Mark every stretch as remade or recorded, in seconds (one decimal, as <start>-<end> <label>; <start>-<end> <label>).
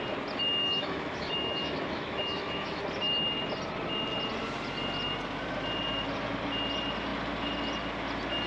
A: 0.0-0.6 recorded; 0.6-2.8 remade; 2.8-8.5 recorded